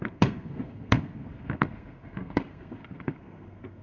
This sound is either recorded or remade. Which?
remade